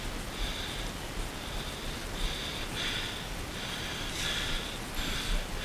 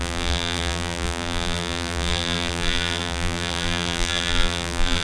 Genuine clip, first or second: first